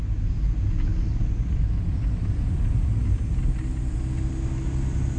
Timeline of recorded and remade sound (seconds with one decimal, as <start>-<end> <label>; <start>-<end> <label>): 0.0-0.9 recorded; 0.9-4.0 remade; 4.0-5.2 recorded

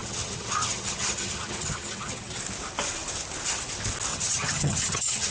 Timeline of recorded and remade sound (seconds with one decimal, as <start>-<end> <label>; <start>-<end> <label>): 0.0-2.4 remade; 2.4-4.1 recorded; 4.1-5.3 remade

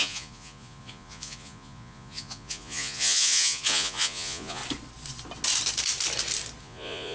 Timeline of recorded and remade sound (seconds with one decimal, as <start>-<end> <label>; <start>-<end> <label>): 0.0-4.6 remade; 4.6-6.6 recorded; 6.6-7.1 remade

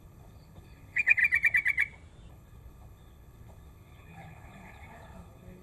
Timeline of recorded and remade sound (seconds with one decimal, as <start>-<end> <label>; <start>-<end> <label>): 0.0-1.2 remade; 1.2-2.3 recorded; 2.3-5.6 remade

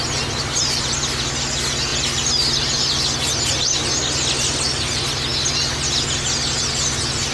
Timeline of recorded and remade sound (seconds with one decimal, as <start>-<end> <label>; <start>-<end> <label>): 0.0-7.3 recorded

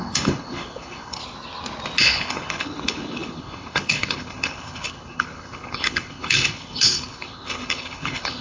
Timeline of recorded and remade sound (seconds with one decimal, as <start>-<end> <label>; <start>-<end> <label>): 0.0-1.2 remade; 1.2-2.0 recorded; 2.0-8.4 remade

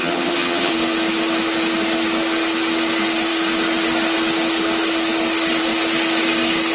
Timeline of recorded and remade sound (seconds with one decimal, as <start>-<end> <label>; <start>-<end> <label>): 0.0-0.7 remade; 0.7-6.7 recorded

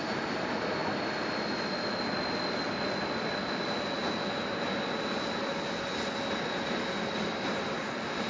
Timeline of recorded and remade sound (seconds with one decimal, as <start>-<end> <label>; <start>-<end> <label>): 0.0-8.3 recorded